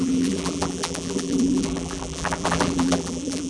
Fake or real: fake